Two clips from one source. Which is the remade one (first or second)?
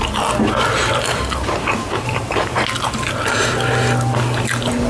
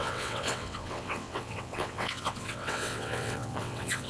second